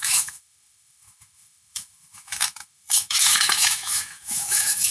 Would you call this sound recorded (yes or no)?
no